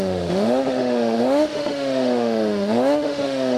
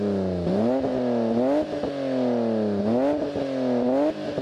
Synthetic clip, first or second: first